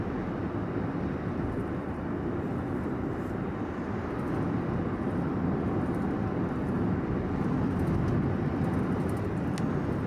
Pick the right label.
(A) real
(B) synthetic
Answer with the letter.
A